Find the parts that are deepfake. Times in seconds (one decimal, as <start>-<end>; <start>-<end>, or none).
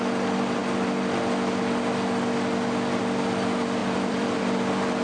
3.8-4.4